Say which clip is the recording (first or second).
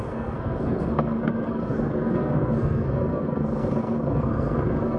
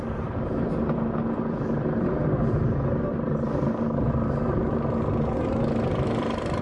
second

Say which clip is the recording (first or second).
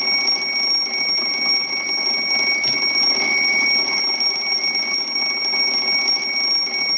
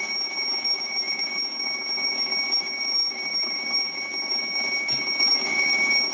first